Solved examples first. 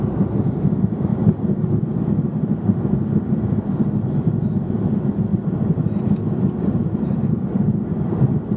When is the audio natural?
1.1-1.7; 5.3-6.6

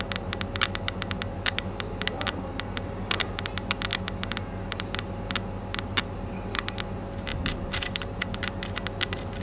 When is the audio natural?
0.0-7.3; 8.4-9.4

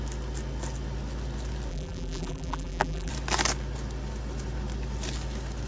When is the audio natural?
0.0-1.7; 3.1-5.7

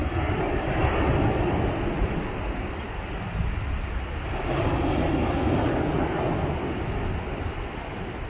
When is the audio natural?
0.0-8.3

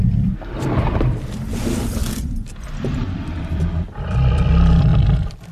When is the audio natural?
none